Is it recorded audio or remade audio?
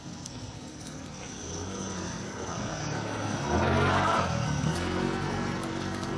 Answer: remade